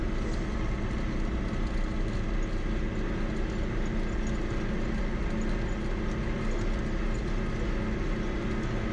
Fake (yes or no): no